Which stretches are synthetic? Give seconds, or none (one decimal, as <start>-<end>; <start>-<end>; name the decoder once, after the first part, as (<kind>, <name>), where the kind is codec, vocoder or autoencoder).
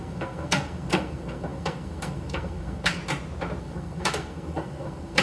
0.0-3.0 (codec, SNAC); 3.6-5.2